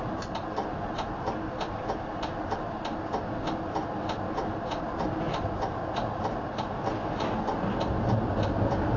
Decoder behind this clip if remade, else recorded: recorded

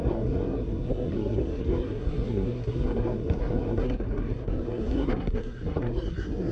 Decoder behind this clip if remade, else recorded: remade, codec, SNAC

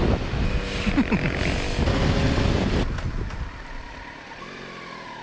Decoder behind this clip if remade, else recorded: recorded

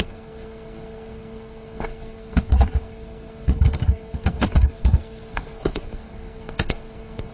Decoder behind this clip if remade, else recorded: remade, codec, SNAC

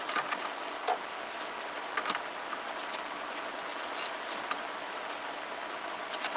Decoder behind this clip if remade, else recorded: recorded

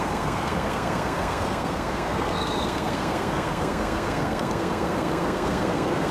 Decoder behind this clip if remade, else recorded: remade, codec, SNAC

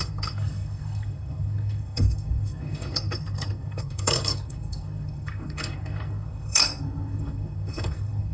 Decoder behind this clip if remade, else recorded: remade, codec, SNAC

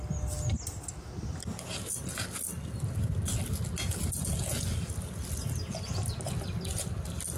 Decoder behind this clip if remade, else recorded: recorded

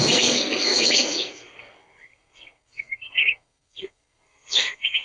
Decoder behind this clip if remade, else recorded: remade, codec, SNAC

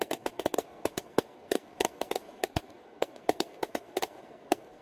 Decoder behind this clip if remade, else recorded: remade, codec, SNAC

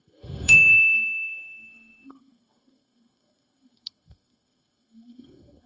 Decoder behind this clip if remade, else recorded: remade, codec, SNAC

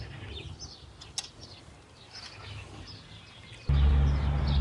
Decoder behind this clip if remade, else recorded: recorded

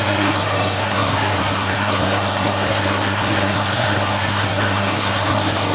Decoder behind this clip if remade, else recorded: remade, codec, SNAC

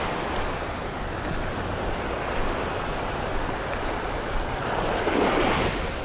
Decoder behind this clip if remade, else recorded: recorded